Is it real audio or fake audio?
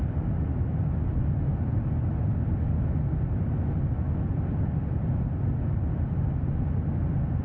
real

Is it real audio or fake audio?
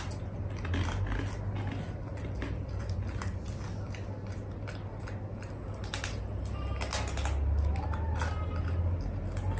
real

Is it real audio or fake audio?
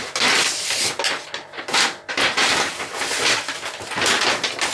real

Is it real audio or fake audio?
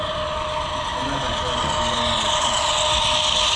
real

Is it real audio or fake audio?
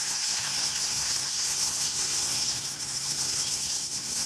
fake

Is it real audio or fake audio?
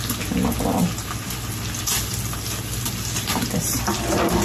real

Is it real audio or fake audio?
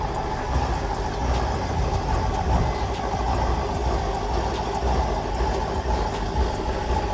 real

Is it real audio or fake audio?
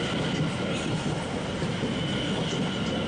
real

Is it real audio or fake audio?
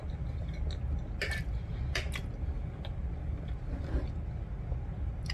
real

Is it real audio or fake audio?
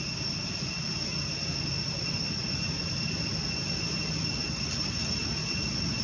real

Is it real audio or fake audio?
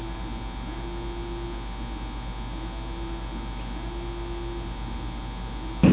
real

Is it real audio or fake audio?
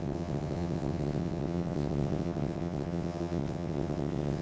fake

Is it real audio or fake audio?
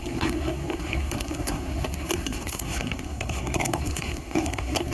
fake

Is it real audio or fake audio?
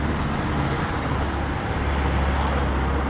real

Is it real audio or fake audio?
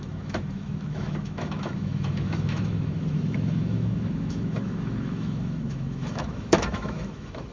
fake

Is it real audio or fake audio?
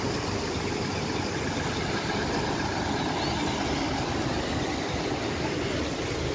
real